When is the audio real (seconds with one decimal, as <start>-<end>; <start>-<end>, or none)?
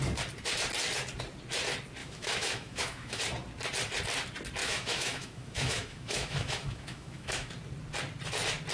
0.0-2.0; 3.2-4.6; 7.5-8.7